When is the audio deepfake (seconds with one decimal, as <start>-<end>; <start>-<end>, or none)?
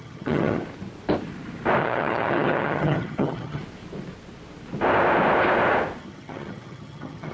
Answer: 0.0-0.6; 1.8-3.6; 6.0-7.3